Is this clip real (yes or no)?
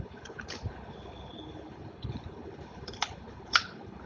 no